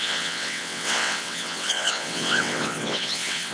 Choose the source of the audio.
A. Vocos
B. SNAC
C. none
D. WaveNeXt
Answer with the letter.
D